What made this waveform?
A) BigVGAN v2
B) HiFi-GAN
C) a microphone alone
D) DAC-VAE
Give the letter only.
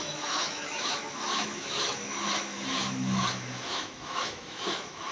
D